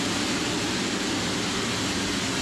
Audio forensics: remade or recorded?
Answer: recorded